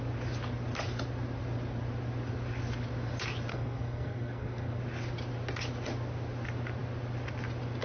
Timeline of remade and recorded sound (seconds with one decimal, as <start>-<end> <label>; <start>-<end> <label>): 0.0-3.5 recorded; 3.5-4.8 remade; 4.8-7.8 recorded